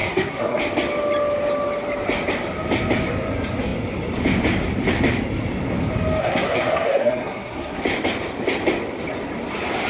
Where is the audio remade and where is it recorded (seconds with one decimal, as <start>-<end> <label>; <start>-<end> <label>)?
0.0-0.6 remade; 0.6-6.2 recorded; 6.2-7.8 remade; 7.8-9.9 recorded